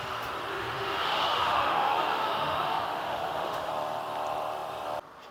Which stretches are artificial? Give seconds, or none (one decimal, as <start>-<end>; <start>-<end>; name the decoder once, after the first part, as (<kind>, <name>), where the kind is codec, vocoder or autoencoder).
0.5-3.7 (autoencoder, DAC-VAE)